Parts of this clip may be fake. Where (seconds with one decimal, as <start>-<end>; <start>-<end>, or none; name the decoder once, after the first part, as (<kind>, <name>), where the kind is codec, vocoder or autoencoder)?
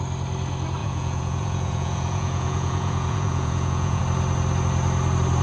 0.8-4.0 (vocoder, Vocos)